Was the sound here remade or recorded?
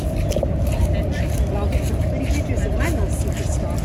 recorded